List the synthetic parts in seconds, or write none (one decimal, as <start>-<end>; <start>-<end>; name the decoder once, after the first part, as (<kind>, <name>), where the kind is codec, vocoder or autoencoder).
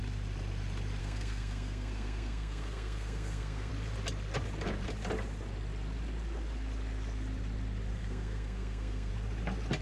1.0-3.7 (codec, SNAC); 8.0-9.1